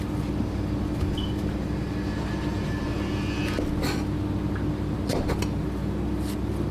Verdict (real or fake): real